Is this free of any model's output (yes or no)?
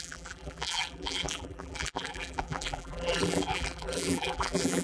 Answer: no